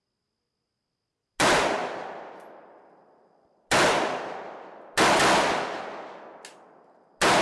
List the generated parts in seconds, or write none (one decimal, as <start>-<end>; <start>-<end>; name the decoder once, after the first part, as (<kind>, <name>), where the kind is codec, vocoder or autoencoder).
none